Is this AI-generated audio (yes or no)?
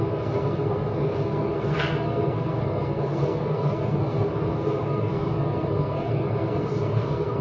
yes